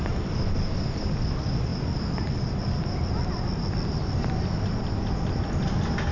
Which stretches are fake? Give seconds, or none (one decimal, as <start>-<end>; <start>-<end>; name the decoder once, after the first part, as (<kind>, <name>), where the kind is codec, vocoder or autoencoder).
none